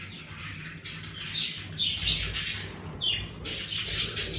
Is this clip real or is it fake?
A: real